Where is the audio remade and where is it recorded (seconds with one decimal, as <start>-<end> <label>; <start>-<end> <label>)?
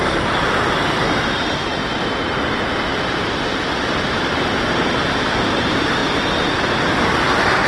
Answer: 0.0-1.7 remade; 1.7-5.6 recorded; 5.6-6.0 remade; 6.0-7.3 recorded; 7.3-7.7 remade